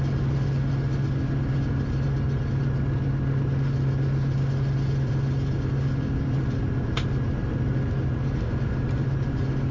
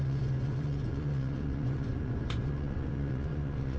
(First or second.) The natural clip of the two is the first